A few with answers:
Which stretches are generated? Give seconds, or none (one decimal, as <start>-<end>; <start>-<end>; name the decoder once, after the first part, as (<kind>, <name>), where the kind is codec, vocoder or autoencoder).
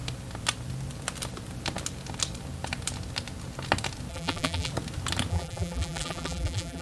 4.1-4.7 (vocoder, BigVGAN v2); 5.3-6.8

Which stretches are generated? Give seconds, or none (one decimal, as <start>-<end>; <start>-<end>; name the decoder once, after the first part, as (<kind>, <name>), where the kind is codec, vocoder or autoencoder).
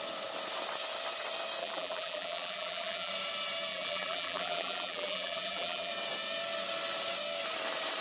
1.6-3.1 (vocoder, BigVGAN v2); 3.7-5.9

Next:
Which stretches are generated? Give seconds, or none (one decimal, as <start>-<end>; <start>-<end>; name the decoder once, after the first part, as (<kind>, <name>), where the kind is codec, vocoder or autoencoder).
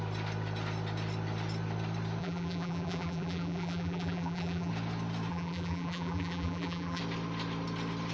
2.2-4.7 (vocoder, BigVGAN v2); 5.3-7.0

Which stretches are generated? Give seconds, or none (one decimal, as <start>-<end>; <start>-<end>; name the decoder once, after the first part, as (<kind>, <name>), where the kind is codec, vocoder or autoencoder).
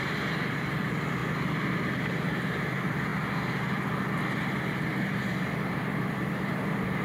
0.0-1.2 (vocoder, BigVGAN v2); 2.6-3.1; 5.2-7.0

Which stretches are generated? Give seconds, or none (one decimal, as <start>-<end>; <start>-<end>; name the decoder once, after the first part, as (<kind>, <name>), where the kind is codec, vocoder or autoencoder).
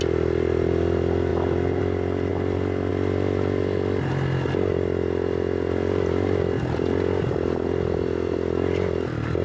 none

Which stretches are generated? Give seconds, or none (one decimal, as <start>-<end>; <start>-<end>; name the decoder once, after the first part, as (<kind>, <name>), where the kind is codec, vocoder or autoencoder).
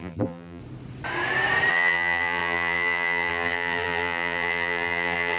0.0-0.6 (vocoder, BigVGAN v2); 1.7-5.4